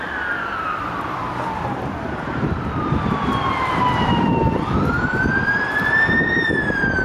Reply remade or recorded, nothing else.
remade